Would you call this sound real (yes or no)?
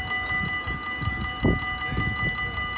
yes